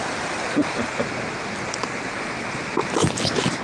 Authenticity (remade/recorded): recorded